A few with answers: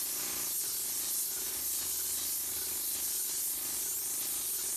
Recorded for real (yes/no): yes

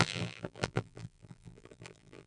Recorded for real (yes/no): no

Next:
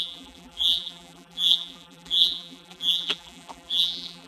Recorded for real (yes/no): no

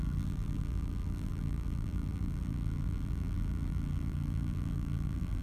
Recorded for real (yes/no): no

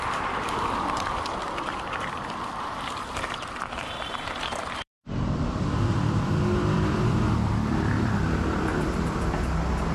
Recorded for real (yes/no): no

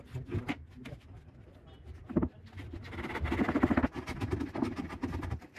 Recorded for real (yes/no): yes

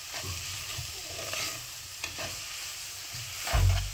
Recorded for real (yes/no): no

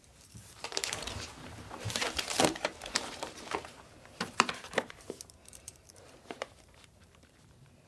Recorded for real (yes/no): no